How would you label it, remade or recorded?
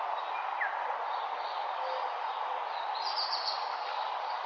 recorded